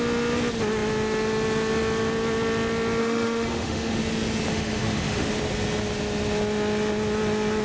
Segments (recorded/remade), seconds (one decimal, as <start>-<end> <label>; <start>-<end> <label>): 0.0-3.0 recorded; 3.0-4.0 remade; 4.0-4.5 recorded; 4.5-5.3 remade; 5.3-7.6 recorded